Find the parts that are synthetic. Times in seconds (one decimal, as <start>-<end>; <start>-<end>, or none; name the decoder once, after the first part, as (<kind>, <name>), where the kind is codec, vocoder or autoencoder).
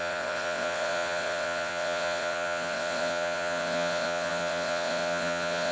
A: 0.0-5.7 (vocoder, WaveNeXt)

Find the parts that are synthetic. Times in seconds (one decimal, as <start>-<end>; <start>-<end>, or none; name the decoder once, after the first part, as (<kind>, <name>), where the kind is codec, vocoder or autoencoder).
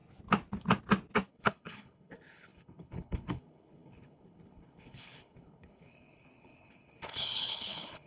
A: 1.3-8.1 (codec, HILCodec)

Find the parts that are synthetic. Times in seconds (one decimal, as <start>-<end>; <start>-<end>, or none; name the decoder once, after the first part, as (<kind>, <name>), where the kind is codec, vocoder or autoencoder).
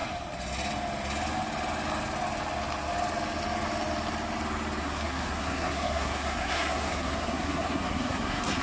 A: 4.8-8.6 (codec, SNAC)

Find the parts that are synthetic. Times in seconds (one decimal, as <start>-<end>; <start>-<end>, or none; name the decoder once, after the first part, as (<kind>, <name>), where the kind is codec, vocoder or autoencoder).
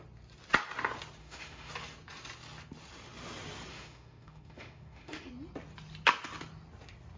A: 1.2-1.7 (autoencoder, DAC-VAE); 3.7-5.3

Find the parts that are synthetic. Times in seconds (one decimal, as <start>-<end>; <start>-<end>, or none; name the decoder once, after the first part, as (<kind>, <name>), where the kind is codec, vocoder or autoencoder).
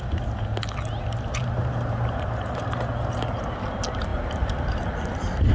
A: 1.4-3.4 (vocoder, BigVGAN v2); 4.1-4.9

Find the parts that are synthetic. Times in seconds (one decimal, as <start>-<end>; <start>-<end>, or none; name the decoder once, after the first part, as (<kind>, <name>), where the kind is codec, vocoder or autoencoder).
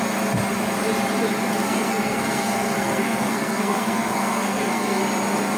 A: 1.6-5.0 (codec, SNAC)